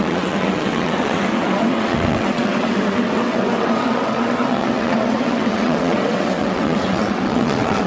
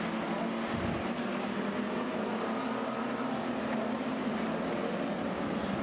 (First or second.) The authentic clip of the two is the second